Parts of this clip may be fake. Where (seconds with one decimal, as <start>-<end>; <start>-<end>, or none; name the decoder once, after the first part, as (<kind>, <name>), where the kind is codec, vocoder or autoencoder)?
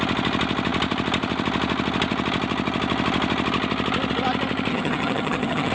4.7-5.7 (vocoder, HiFi-GAN)